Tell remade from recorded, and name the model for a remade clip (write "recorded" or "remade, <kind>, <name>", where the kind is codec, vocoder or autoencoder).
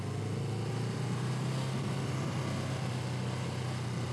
recorded